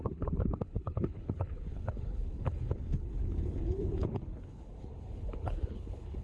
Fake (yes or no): yes